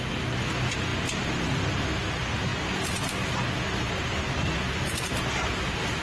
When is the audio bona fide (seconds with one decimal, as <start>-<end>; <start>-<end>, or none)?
0.0-6.0